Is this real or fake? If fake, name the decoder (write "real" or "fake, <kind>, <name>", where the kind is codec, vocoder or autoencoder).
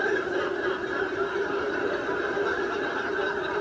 real